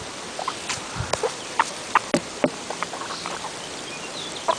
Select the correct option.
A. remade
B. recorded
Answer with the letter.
B